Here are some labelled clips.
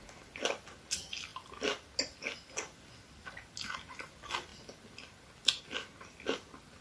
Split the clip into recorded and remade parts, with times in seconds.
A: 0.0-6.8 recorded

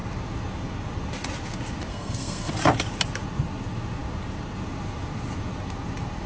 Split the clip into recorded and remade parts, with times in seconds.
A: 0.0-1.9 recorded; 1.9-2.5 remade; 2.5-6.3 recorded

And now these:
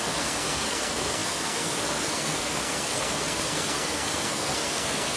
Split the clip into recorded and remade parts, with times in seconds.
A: 0.0-5.2 remade

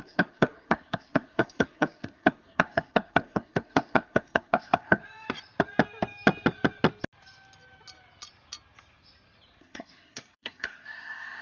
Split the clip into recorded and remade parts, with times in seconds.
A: 0.0-5.0 remade; 5.0-9.6 recorded; 9.6-11.4 remade

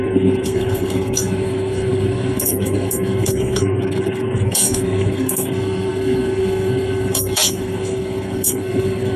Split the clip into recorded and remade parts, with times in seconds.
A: 0.0-9.2 remade

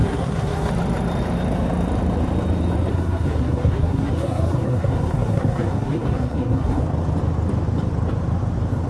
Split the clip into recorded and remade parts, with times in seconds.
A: 0.0-0.7 remade; 0.7-2.9 recorded; 2.9-6.8 remade; 6.8-8.9 recorded